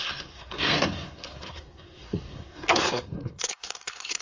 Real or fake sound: fake